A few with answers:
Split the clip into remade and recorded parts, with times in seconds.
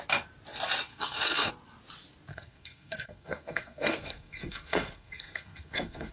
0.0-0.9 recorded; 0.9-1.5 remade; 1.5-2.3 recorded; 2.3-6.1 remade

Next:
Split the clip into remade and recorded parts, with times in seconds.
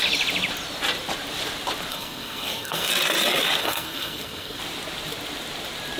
0.0-1.9 recorded; 1.9-2.9 remade; 2.9-3.6 recorded; 3.6-4.6 remade; 4.6-6.0 recorded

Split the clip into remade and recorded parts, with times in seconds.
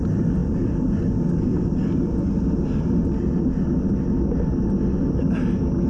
0.0-5.9 recorded